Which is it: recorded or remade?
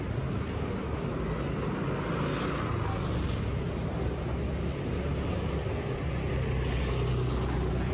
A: recorded